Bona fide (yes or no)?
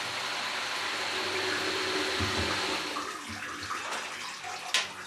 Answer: yes